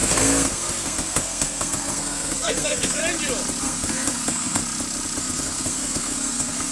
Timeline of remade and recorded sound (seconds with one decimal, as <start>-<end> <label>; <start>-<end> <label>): 0.0-3.0 remade; 3.0-3.6 recorded; 3.6-4.6 remade; 4.6-5.2 recorded; 5.2-6.7 remade